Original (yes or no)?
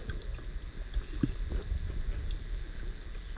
yes